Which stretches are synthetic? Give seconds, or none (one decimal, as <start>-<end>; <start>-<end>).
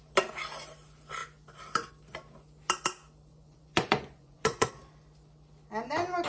3.3-4.7